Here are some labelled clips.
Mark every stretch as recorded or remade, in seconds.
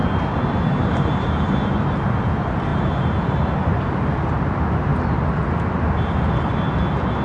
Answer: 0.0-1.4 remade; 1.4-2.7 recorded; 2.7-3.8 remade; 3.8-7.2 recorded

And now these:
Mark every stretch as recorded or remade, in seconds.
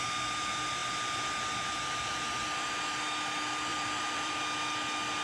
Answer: 0.0-3.7 recorded; 3.7-4.3 remade; 4.3-5.2 recorded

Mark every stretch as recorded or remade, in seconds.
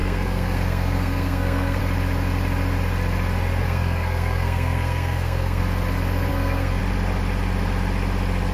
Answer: 0.0-1.8 remade; 1.8-3.6 recorded; 3.6-5.6 remade; 5.6-6.3 recorded; 6.3-6.8 remade; 6.8-8.5 recorded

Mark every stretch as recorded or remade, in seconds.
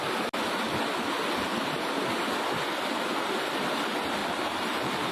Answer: 0.0-4.2 recorded; 4.2-5.1 remade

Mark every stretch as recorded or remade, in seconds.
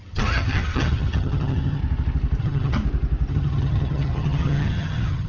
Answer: 0.0-1.8 remade; 1.8-2.4 recorded; 2.4-2.8 remade; 2.8-3.3 recorded; 3.3-5.3 remade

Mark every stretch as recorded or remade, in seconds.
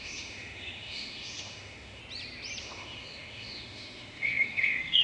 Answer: 0.0-2.0 remade; 2.0-2.6 recorded; 2.6-5.0 remade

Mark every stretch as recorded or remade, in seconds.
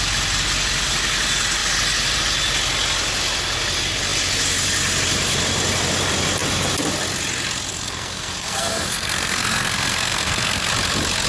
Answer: 0.0-7.7 recorded; 7.7-10.7 remade; 10.7-11.3 recorded